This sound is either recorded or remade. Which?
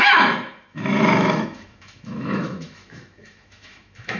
remade